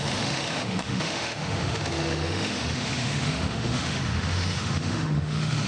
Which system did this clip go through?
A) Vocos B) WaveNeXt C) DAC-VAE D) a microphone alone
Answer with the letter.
C